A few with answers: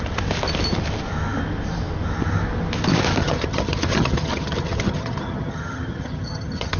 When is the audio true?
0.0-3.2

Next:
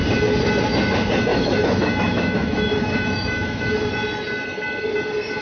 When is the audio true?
0.0-1.3; 3.7-5.4